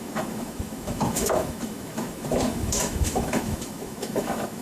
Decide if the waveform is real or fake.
fake